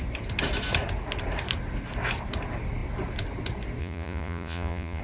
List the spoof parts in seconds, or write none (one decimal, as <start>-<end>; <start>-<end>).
3.8-5.0